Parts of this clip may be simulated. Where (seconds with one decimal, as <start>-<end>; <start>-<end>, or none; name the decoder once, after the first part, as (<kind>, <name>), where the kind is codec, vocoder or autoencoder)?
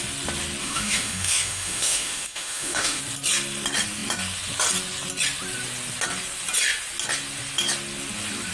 0.6-3.0 (autoencoder, DAC-VAE)